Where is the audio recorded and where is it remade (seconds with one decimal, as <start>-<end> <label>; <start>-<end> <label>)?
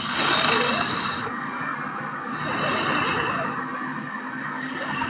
0.0-1.7 remade; 1.7-4.4 recorded; 4.4-5.1 remade